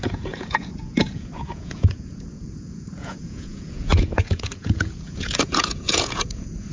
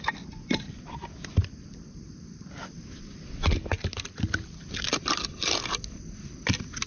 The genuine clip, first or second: second